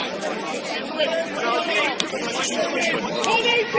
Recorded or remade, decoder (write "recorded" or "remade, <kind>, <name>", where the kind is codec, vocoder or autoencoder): remade, vocoder, BigVGAN v2